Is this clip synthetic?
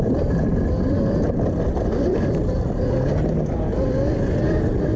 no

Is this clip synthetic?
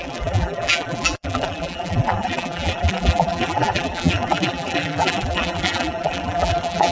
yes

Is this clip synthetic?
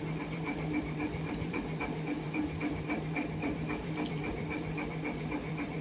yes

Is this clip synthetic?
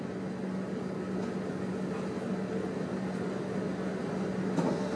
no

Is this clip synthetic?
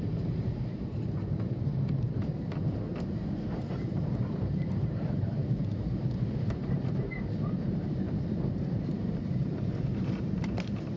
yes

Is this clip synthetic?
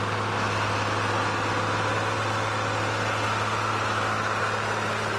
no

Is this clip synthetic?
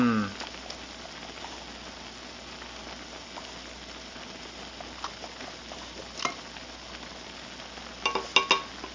no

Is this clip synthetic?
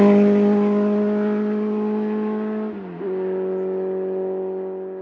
no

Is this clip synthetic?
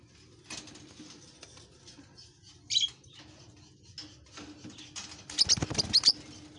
no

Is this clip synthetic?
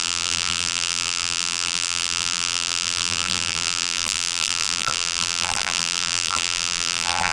yes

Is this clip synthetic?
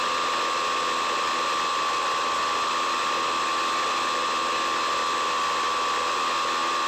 no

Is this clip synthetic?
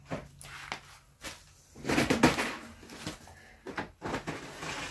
no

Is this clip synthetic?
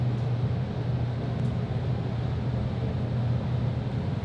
no